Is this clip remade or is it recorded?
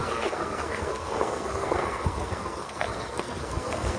remade